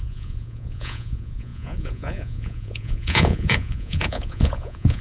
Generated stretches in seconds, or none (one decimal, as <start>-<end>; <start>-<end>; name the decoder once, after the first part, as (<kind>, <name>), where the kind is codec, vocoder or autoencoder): 0.0-5.0 (vocoder, Vocos)